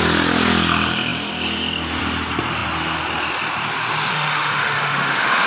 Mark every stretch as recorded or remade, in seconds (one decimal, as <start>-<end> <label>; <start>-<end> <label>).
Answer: 0.0-4.1 recorded; 4.1-5.5 remade